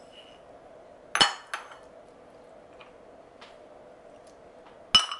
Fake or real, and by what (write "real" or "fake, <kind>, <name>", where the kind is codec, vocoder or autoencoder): real